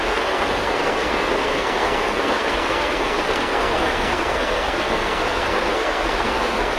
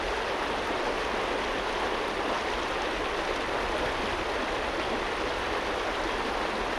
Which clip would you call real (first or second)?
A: second